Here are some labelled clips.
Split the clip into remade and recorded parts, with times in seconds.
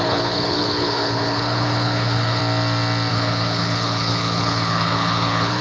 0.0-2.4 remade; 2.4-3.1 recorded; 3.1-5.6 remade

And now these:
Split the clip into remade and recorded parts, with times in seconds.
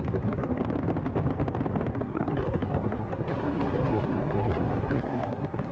0.0-0.6 remade; 0.6-1.9 recorded; 1.9-5.7 remade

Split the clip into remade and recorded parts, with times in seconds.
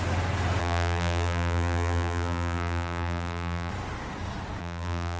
0.0-0.6 recorded; 0.6-3.7 remade; 3.7-4.6 recorded; 4.6-5.2 remade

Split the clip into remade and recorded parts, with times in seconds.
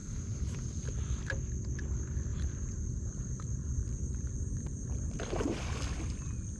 0.0-0.9 remade; 0.9-2.3 recorded; 2.3-5.6 remade; 5.6-6.6 recorded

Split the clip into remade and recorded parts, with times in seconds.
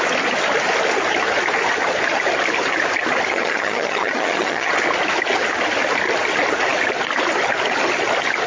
0.0-3.3 recorded; 3.3-4.7 remade; 4.7-8.5 recorded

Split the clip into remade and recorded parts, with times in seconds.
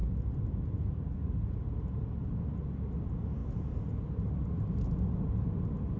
0.0-6.0 recorded